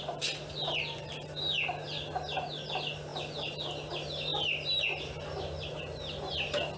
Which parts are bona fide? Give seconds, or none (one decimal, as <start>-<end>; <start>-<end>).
0.0-6.8